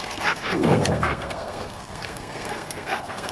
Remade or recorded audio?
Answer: remade